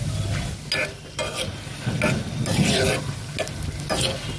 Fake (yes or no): no